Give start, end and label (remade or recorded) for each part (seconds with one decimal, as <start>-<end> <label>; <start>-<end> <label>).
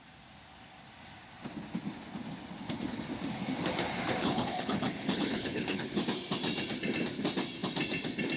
0.0-4.2 recorded; 4.2-6.0 remade; 6.0-8.4 recorded